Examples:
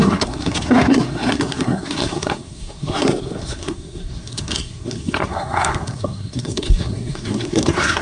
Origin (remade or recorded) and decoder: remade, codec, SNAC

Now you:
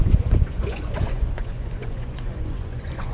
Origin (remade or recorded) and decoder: remade, vocoder, Vocos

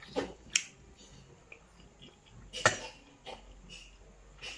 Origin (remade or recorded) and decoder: recorded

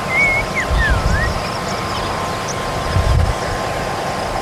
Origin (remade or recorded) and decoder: recorded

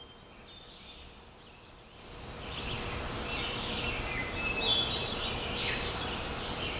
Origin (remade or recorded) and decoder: recorded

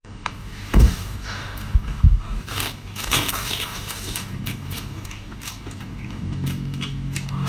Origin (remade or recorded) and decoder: remade, codec, DAC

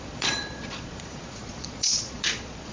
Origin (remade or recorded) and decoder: remade, vocoder, Vocos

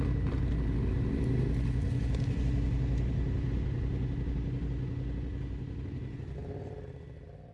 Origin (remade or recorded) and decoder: recorded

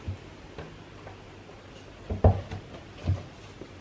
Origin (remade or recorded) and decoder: recorded